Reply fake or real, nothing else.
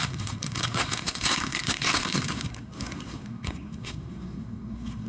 fake